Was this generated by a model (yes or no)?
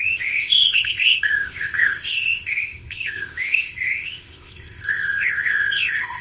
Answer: yes